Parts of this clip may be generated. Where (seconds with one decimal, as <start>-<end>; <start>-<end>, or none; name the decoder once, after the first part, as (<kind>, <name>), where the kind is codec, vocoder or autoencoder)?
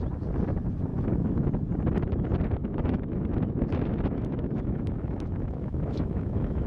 0.9-1.5 (autoencoder, DAC-VAE); 2.6-6.7